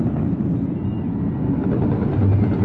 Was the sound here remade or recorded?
recorded